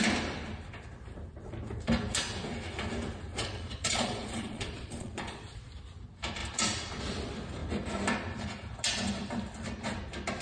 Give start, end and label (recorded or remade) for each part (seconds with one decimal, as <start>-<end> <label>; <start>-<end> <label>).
0.0-3.3 recorded; 3.3-5.7 remade; 5.7-10.4 recorded